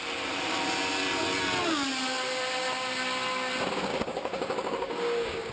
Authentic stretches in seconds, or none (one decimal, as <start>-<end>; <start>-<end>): 0.0-3.9